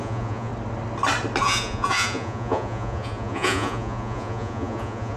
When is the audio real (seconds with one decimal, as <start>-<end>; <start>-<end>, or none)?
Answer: 0.5-1.4